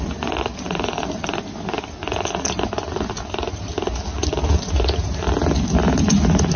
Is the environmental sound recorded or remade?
recorded